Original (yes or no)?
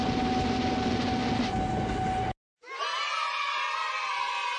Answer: yes